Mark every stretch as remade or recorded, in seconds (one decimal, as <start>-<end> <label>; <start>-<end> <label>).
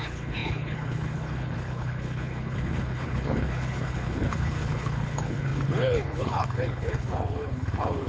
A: 0.0-8.1 remade